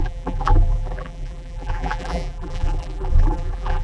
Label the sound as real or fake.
fake